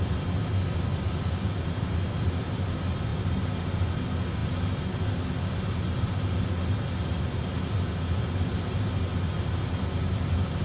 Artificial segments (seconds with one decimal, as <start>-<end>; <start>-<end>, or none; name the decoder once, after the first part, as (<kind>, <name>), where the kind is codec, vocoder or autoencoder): none